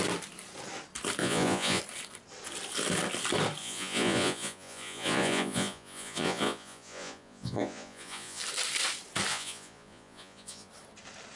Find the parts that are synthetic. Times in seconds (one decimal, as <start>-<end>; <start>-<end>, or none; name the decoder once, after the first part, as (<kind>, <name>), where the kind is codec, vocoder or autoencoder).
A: 1.2-1.8 (vocoder, Vocos); 3.6-8.4; 9.3-10.7